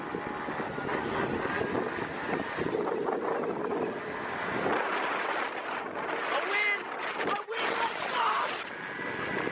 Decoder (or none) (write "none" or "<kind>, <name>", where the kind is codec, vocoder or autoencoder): none